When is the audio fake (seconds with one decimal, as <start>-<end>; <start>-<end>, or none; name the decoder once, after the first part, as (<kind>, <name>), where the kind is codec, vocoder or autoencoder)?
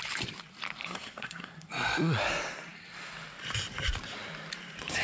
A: 0.8-1.7 (codec, SNAC)